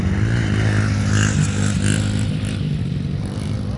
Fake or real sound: real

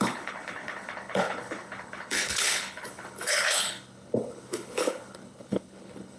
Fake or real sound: fake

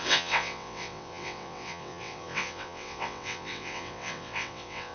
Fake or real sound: fake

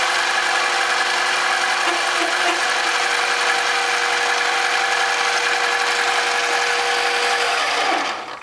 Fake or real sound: real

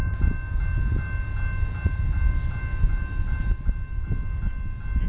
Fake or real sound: real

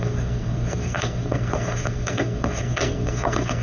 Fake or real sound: fake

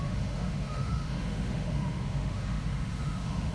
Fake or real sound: fake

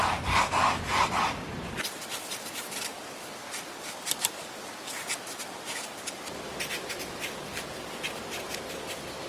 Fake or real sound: fake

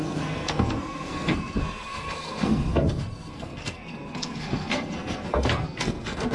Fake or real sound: fake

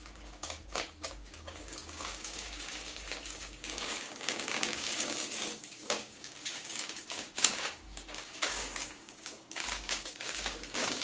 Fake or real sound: fake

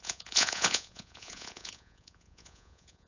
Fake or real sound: fake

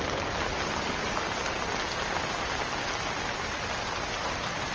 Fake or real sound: real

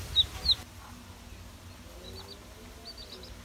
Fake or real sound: real